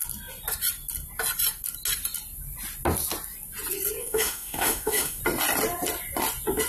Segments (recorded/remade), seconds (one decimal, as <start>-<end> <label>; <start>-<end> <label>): 0.0-4.0 recorded; 4.0-5.2 remade; 5.2-6.7 recorded